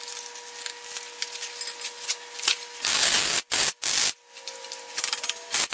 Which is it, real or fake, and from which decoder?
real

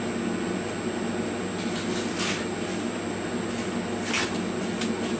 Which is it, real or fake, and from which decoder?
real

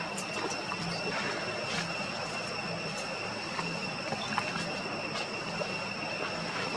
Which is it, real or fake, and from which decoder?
real